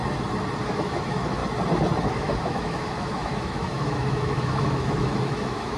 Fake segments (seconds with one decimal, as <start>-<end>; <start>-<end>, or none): 0.6-1.4; 2.0-5.8